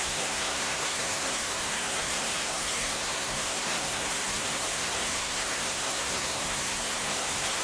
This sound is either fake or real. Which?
fake